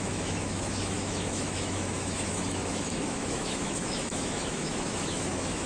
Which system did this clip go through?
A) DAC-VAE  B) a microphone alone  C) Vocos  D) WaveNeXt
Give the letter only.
A